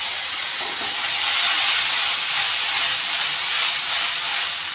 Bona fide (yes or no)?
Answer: yes